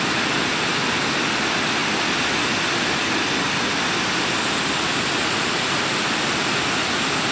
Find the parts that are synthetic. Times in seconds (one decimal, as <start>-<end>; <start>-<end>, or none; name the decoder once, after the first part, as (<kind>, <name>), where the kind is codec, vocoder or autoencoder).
none